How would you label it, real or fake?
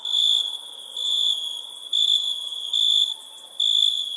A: real